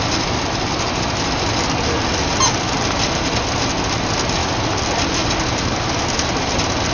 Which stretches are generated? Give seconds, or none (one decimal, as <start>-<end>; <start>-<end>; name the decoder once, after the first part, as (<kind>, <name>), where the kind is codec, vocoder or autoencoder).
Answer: none